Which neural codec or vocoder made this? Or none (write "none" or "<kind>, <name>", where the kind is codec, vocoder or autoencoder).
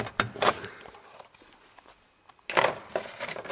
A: none